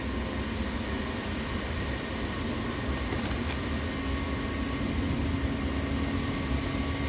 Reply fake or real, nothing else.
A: real